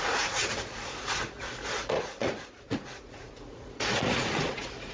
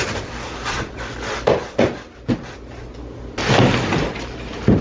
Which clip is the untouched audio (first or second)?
second